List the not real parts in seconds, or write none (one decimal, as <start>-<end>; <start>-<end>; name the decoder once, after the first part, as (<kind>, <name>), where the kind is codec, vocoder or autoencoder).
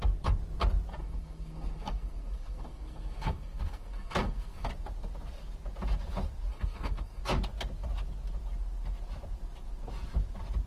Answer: 1.0-4.7 (codec, SNAC); 6.5-7.2